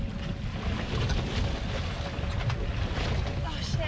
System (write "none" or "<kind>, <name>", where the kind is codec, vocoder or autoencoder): none